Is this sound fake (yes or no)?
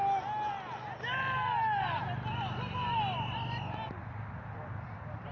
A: no